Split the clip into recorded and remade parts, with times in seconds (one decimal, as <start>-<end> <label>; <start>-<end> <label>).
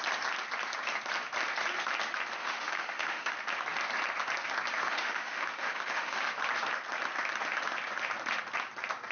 0.0-2.4 recorded; 2.4-3.3 remade; 3.3-4.8 recorded; 4.8-6.3 remade; 6.3-9.1 recorded